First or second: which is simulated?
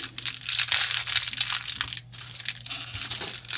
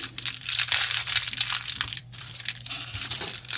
second